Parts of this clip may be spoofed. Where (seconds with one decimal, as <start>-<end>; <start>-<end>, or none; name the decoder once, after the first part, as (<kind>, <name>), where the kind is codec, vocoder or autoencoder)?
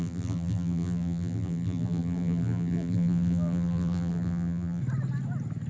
0.0-4.8 (vocoder, BigVGAN v2)